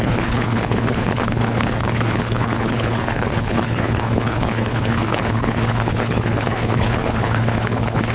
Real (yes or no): no